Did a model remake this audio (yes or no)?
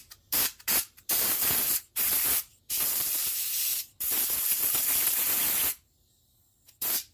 yes